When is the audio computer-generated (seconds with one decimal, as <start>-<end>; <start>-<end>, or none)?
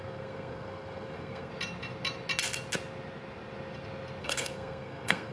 0.0-1.5; 4.2-5.3